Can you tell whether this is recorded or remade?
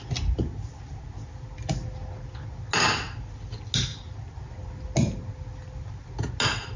recorded